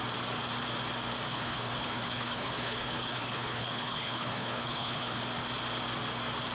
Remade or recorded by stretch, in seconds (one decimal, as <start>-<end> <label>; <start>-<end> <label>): 0.0-1.3 recorded; 1.3-5.2 remade; 5.2-6.5 recorded